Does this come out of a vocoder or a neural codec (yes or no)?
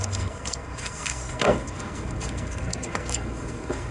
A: yes